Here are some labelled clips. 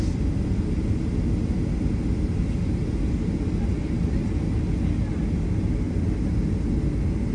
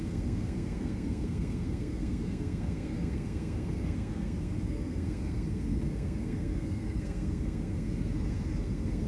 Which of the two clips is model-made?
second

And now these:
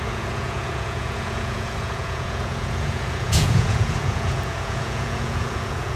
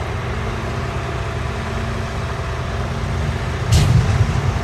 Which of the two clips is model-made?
first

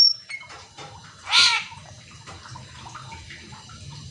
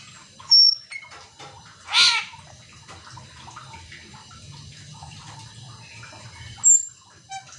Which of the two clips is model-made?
first